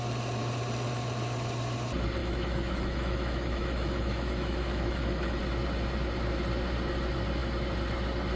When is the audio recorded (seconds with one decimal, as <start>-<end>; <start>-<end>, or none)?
0.0-2.2; 5.4-8.4